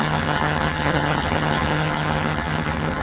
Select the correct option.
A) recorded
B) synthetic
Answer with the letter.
B